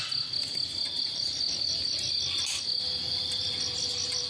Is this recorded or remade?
recorded